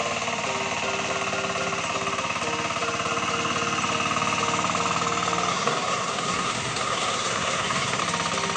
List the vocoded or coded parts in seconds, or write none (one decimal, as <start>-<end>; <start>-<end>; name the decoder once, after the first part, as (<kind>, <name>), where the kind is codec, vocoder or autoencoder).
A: 5.5-8.0 (codec, SNAC)